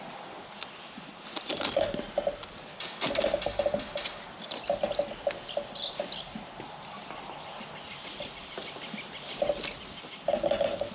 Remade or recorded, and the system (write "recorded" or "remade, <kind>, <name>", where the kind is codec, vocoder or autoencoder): recorded